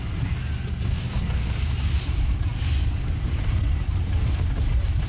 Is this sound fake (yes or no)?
no